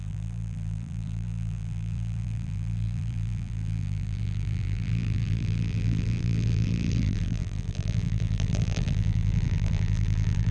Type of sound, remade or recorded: remade